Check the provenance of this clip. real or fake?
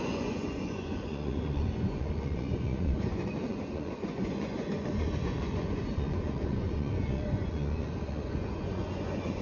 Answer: fake